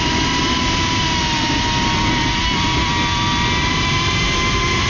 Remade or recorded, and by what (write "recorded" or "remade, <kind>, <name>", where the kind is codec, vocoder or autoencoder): recorded